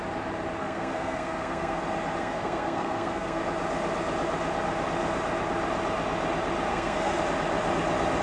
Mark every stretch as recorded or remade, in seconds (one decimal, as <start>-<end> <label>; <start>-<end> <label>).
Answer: 0.0-0.6 recorded; 0.6-1.8 remade; 1.8-2.2 recorded; 2.2-3.4 remade; 3.4-6.7 recorded; 6.7-7.2 remade; 7.2-8.2 recorded